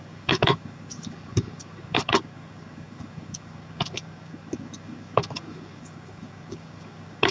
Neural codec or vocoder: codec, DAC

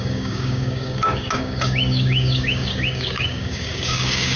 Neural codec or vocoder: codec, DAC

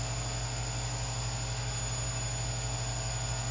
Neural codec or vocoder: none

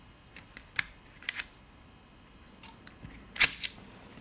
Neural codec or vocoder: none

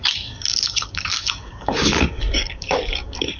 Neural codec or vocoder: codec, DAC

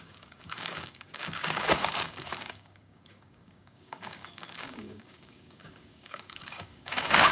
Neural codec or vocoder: codec, DAC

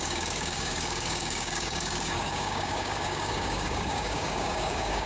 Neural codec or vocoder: codec, DAC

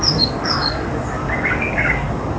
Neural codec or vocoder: codec, DAC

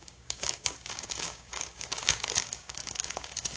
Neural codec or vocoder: codec, DAC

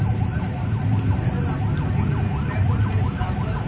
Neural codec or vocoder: none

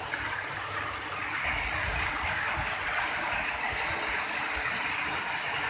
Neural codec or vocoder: none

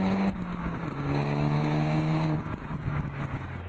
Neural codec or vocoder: codec, DAC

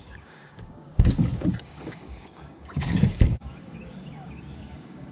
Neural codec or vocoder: codec, DAC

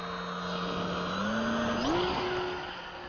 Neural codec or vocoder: none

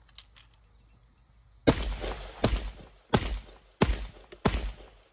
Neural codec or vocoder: none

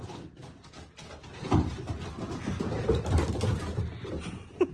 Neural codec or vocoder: none